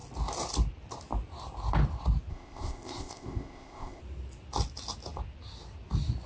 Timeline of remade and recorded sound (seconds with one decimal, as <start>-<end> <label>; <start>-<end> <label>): 0.0-2.3 recorded; 2.3-4.0 remade; 4.0-6.3 recorded